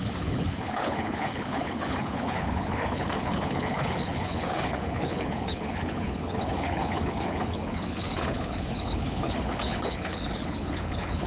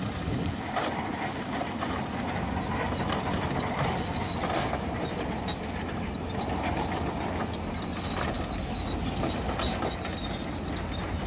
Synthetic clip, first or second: first